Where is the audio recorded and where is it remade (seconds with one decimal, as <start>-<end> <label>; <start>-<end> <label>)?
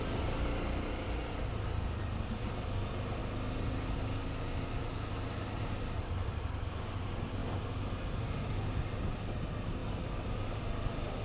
0.0-9.8 recorded; 9.8-10.6 remade; 10.6-11.2 recorded